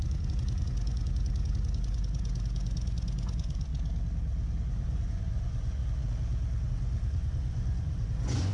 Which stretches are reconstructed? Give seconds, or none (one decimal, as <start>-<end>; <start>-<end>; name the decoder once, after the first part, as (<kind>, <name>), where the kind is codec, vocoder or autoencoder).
0.0-3.7 (vocoder, Vocos); 4.7-5.8; 6.7-8.5